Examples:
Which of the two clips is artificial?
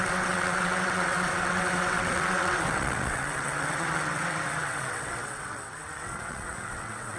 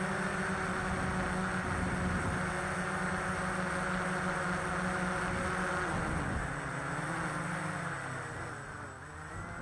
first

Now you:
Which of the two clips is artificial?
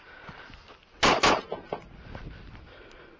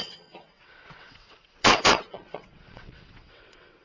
second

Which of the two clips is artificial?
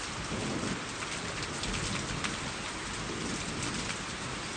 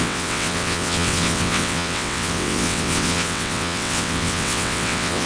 second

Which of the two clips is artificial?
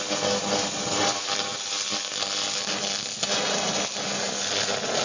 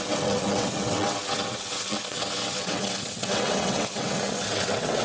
second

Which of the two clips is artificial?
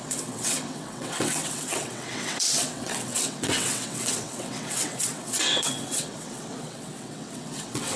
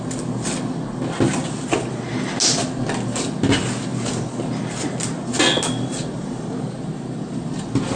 first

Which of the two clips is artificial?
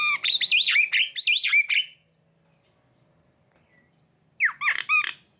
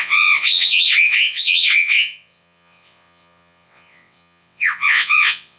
second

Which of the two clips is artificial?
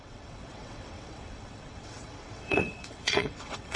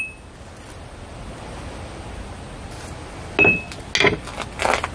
first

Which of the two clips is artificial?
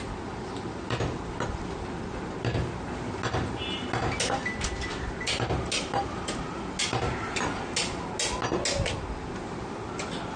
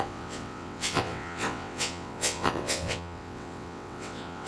second